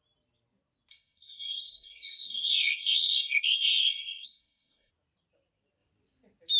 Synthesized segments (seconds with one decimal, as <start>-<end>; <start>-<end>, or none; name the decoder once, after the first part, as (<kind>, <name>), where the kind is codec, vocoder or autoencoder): 0.9-4.9 (codec, SNAC)